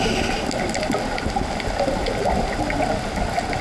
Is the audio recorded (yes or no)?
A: yes